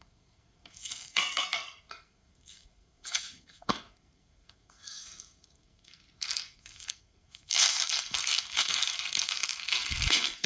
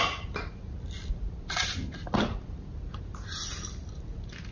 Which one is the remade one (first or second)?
first